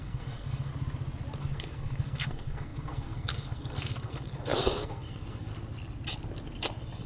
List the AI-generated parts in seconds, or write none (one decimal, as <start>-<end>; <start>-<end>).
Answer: 0.0-0.7; 1.4-5.5